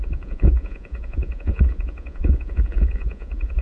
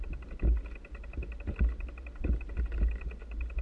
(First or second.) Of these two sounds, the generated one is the first